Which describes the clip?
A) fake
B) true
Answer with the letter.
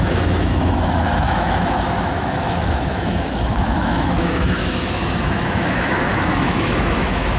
A